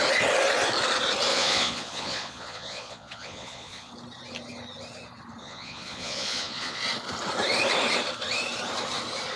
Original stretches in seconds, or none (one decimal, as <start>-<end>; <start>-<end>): 0.0-1.3; 3.9-5.4; 6.8-9.4